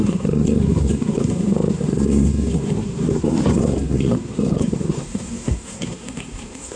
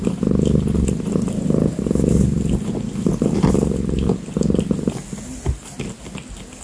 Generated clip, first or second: first